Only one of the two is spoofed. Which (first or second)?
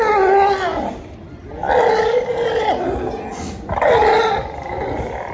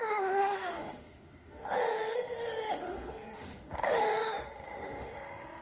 second